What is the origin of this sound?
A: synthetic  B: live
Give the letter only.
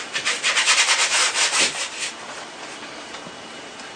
A